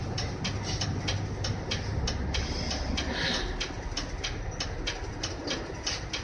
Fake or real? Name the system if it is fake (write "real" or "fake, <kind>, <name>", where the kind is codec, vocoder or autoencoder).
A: real